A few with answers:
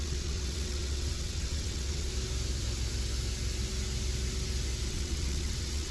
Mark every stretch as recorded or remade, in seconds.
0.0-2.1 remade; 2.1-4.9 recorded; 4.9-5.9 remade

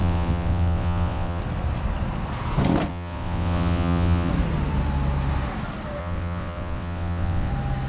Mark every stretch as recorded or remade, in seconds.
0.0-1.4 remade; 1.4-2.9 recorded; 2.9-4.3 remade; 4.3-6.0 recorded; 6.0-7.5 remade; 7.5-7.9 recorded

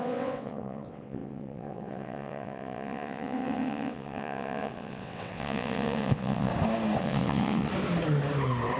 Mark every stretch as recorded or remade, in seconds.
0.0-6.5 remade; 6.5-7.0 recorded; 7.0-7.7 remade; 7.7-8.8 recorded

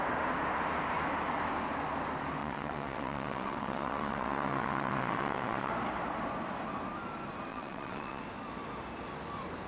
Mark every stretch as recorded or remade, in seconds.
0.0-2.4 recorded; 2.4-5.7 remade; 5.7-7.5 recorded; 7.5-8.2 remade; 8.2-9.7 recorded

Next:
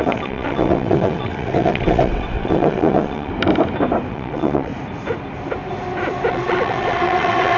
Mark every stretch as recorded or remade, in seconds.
0.0-3.3 remade; 3.3-4.1 recorded; 4.1-4.7 remade; 4.7-6.3 recorded; 6.3-7.6 remade

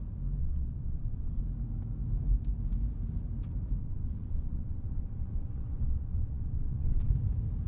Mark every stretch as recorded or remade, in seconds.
0.0-0.4 recorded; 0.4-1.4 remade; 1.4-3.8 recorded; 3.8-7.1 remade; 7.1-7.7 recorded